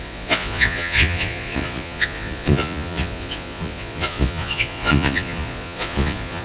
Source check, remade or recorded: remade